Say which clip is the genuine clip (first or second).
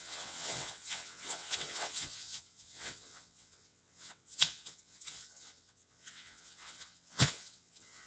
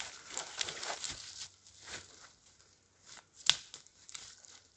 second